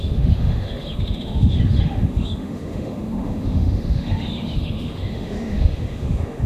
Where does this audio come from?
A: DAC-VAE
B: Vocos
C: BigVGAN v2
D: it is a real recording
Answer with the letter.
A